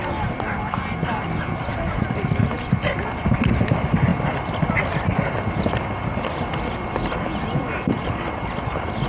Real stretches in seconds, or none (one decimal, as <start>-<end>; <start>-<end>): 0.0-9.1